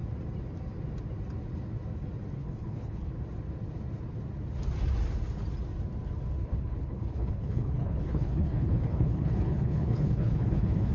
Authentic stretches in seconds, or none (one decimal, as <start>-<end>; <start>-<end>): 0.0-2.4; 3.1-6.4